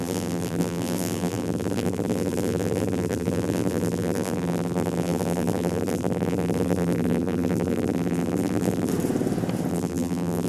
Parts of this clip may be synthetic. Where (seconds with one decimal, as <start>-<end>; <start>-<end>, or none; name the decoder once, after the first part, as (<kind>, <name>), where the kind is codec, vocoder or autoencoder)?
0.0-8.9 (vocoder, BigVGAN v2); 9.7-10.5